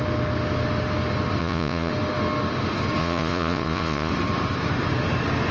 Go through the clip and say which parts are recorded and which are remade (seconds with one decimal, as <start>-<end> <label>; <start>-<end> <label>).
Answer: 0.0-1.4 recorded; 1.4-1.9 remade; 1.9-3.0 recorded; 3.0-4.1 remade; 4.1-5.5 recorded